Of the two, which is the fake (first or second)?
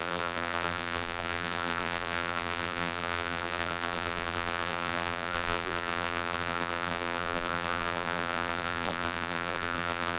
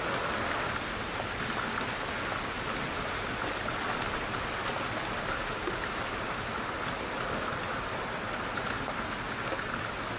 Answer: first